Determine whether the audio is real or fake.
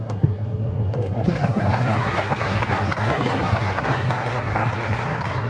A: fake